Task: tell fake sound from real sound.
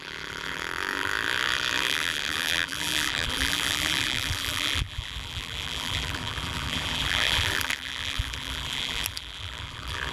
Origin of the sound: fake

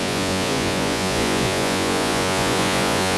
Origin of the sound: fake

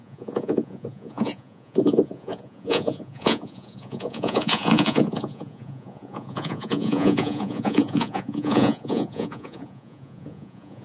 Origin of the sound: fake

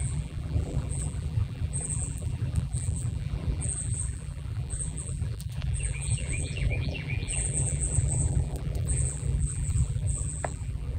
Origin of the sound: fake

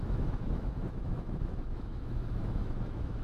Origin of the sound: fake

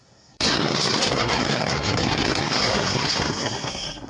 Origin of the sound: fake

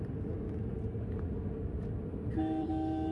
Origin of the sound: real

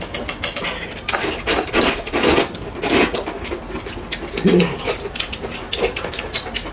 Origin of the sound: real